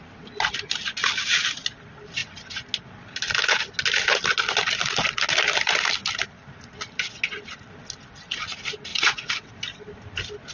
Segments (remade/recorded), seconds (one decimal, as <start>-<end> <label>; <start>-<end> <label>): 0.0-8.9 recorded; 8.9-9.5 remade; 9.5-10.5 recorded